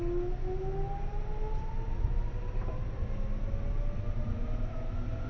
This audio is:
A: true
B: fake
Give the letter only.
A